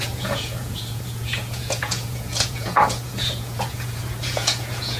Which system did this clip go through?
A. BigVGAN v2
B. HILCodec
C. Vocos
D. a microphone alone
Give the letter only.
C